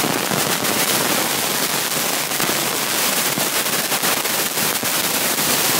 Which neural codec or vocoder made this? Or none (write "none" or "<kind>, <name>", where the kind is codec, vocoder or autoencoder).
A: none